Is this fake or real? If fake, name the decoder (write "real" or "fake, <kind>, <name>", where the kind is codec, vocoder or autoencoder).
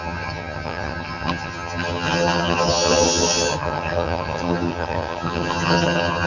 fake, vocoder, HiFi-GAN